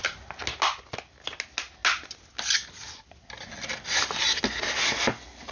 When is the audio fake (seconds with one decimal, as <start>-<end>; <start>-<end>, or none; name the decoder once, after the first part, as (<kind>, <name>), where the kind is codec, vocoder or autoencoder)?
none